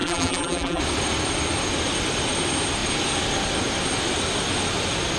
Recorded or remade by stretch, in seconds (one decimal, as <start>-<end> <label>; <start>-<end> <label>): 0.0-0.8 remade; 0.8-5.2 recorded